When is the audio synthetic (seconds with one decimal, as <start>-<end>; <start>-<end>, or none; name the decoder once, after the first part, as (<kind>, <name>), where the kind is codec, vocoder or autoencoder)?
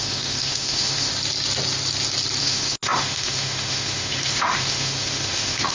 0.0-1.1 (autoencoder, DAC-VAE); 2.4-5.7